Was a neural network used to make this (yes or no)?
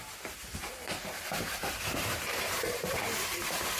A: yes